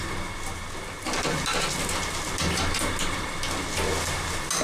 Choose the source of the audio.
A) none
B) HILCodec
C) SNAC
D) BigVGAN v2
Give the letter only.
A